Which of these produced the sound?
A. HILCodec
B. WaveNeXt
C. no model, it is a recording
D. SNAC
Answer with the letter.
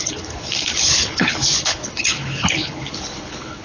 A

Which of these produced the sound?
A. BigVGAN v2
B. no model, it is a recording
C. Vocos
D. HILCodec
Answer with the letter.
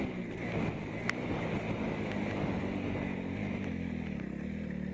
B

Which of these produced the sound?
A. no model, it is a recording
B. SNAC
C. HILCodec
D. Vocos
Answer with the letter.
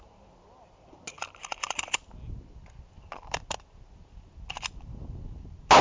A